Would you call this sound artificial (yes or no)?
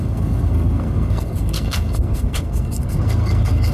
yes